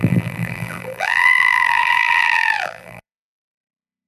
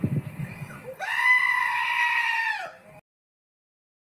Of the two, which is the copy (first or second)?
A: first